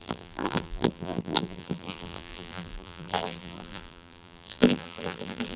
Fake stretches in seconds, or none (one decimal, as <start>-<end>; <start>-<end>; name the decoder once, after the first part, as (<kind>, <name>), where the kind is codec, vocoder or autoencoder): 0.0-5.6 (vocoder, BigVGAN v2)